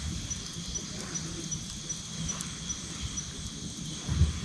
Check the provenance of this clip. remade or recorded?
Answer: recorded